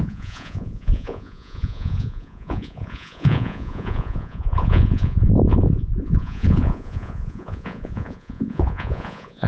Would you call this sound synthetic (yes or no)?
yes